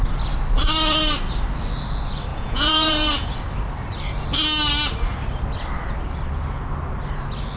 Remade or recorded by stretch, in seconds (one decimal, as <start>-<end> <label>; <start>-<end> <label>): 0.0-2.3 recorded; 2.3-3.3 remade; 3.3-7.6 recorded